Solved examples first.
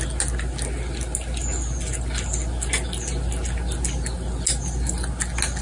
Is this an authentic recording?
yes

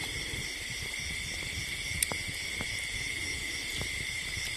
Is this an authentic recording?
yes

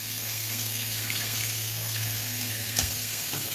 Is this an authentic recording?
no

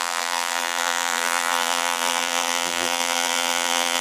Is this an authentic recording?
no